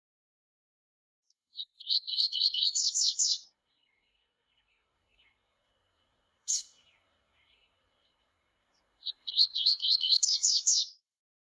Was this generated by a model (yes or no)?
yes